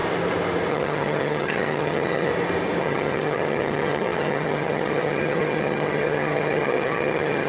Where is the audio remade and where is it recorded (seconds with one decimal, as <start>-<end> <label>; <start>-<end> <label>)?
0.0-0.7 recorded; 0.7-2.3 remade; 2.3-2.8 recorded; 2.8-7.5 remade